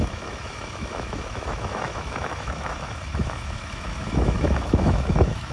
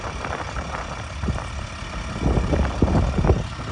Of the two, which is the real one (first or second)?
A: second